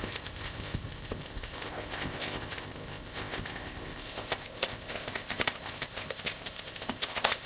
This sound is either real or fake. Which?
fake